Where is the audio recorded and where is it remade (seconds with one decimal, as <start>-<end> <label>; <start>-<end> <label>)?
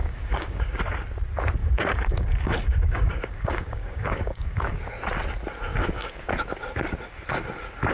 0.0-0.6 remade; 0.6-1.6 recorded; 1.6-4.9 remade; 4.9-5.7 recorded; 5.7-6.3 remade; 6.3-7.9 recorded